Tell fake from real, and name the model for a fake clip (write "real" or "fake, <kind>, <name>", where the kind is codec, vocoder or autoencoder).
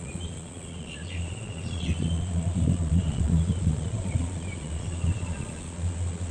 fake, vocoder, Vocos